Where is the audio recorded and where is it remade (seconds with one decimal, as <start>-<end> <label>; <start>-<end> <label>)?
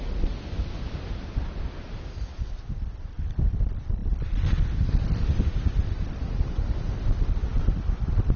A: 0.0-8.4 recorded